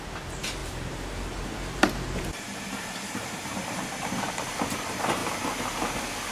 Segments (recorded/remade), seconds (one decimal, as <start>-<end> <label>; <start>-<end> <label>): 0.0-0.6 recorded; 0.6-4.3 remade; 4.3-6.3 recorded